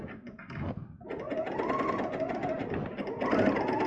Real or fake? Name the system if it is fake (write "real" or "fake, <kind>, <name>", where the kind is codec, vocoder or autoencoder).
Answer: real